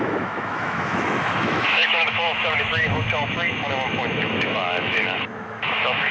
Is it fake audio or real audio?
fake